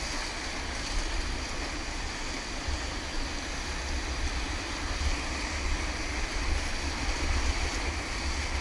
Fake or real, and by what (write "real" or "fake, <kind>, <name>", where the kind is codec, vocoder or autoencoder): real